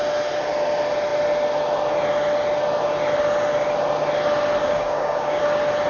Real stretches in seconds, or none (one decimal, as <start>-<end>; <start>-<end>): 0.0-4.6; 5.4-5.9